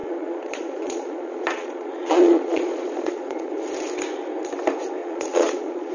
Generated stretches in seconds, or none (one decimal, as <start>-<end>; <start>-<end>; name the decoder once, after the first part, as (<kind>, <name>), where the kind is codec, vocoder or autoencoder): 0.0-3.5 (vocoder, Vocos); 5.0-5.9